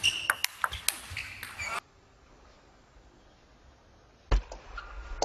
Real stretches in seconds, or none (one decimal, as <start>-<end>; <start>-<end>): 0.0-5.2